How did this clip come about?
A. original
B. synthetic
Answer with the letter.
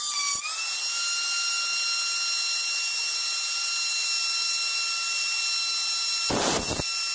A